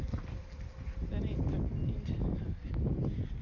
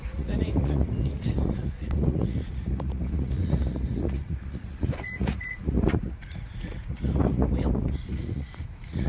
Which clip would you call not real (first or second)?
second